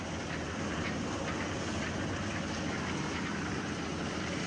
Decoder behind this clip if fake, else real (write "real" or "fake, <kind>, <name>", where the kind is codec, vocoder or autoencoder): real